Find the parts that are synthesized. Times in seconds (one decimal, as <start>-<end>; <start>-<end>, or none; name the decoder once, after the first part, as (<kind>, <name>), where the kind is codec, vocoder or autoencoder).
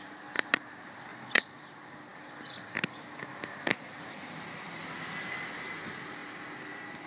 1.1-1.6 (vocoder, Vocos)